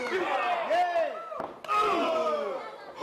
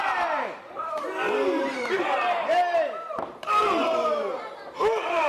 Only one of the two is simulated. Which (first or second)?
second